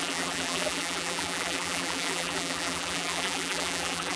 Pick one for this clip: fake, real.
fake